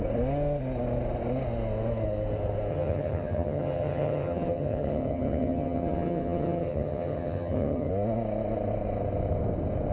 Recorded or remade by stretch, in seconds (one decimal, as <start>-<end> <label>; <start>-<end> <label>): 0.0-2.7 recorded; 2.7-7.9 remade; 7.9-9.9 recorded